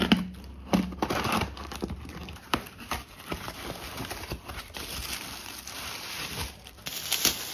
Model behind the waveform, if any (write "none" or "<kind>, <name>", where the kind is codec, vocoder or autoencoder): none